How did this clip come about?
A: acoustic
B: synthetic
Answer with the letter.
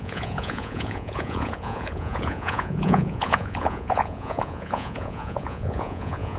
B